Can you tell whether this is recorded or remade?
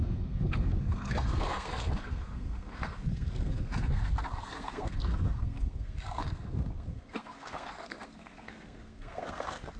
remade